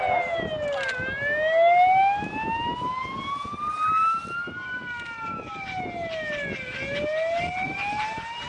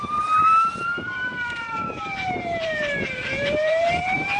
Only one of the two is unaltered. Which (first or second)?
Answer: first